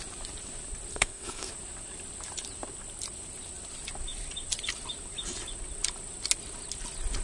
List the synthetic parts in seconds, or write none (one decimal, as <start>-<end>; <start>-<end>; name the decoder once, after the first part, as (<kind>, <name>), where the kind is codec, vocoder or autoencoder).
0.9-1.5 (codec, SNAC)